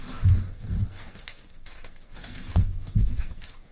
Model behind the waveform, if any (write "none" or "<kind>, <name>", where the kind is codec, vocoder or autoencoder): codec, SNAC